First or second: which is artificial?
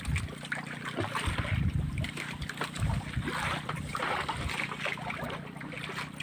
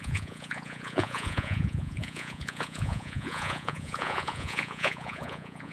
second